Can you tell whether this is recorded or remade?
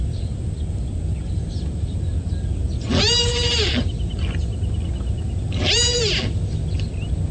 recorded